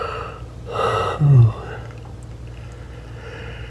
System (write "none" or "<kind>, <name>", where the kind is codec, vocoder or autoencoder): none